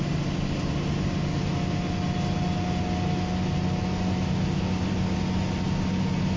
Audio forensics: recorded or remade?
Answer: recorded